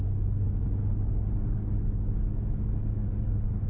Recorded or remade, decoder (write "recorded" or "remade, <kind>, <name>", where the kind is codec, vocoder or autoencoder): recorded